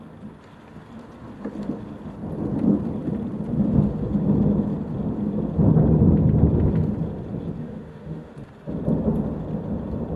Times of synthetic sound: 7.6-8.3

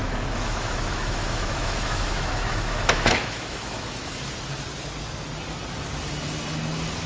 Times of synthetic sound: 0.0-4.3

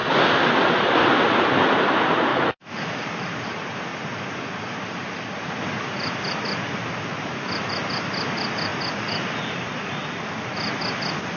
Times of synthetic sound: 2.3-3.0

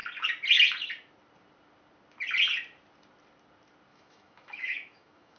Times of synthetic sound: 3.9-5.4

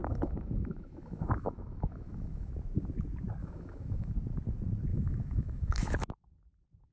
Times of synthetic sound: 0.0-2.5; 3.4-4.1; 4.9-6.2

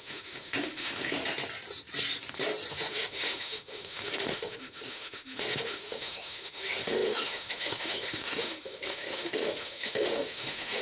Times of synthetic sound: 0.0-1.2; 2.7-10.8